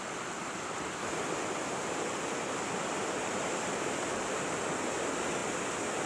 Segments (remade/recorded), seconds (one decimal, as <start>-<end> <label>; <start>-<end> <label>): 0.0-6.1 recorded